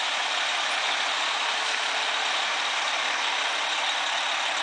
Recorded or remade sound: recorded